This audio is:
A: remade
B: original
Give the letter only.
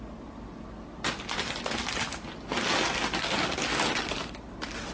B